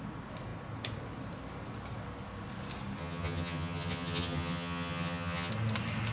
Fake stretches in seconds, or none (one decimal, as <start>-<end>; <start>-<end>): 3.0-5.5

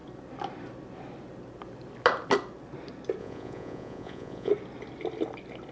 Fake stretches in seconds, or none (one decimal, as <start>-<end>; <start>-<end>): 3.2-4.5

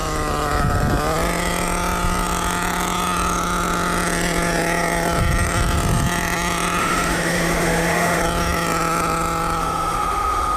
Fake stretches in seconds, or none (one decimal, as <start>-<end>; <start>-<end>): 6.8-8.2; 9.6-10.6

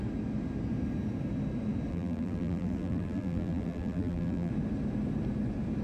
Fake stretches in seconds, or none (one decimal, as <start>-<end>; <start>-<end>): 1.9-4.5